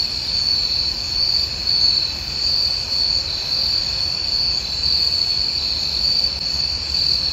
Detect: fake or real real